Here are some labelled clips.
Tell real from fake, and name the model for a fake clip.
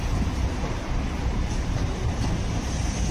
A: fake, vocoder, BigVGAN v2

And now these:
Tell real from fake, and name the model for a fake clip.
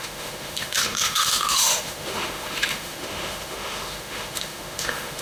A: fake, autoencoder, DAC-VAE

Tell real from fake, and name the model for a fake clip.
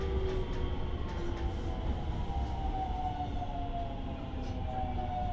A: real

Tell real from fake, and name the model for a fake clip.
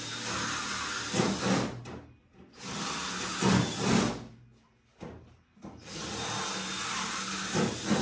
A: real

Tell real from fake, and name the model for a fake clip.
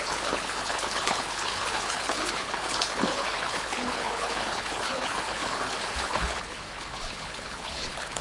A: fake, codec, HILCodec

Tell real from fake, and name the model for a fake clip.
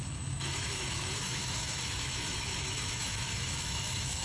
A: fake, autoencoder, DAC-VAE